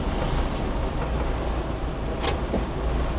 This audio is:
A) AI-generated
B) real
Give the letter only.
B